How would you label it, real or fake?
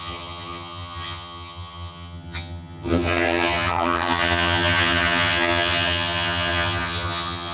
fake